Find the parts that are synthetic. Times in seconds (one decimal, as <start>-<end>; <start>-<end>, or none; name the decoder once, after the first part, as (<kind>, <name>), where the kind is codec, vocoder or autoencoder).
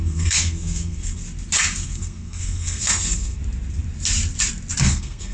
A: 0.0-1.2 (codec, SNAC); 1.8-3.4; 4.8-5.3